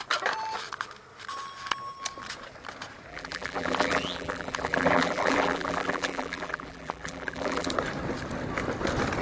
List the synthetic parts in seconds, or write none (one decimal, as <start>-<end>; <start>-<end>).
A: 3.1-7.7